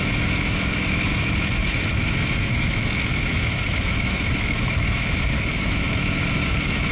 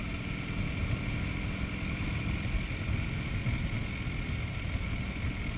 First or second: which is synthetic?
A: first